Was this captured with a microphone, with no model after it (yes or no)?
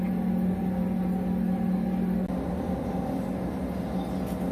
yes